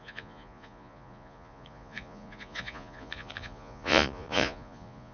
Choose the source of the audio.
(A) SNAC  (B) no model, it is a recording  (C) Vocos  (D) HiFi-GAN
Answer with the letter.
C